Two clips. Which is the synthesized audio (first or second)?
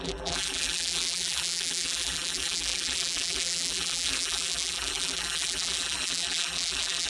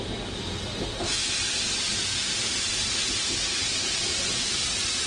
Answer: first